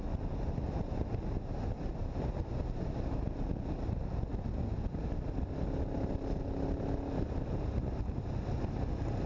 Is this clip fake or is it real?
real